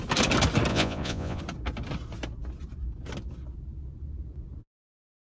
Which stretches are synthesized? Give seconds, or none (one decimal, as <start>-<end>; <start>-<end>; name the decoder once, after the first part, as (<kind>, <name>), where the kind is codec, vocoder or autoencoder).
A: 0.7-1.4 (vocoder, Vocos)